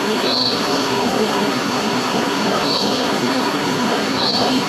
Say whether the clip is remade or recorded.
remade